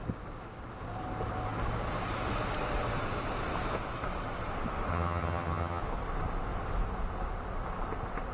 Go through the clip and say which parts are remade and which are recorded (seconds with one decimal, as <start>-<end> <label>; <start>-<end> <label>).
0.0-4.9 recorded; 4.9-5.8 remade; 5.8-8.3 recorded